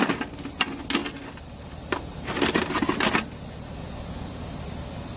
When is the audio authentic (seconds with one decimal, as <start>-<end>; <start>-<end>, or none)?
0.0-5.2